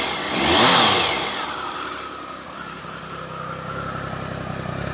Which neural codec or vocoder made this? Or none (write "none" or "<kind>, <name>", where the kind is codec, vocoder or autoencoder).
none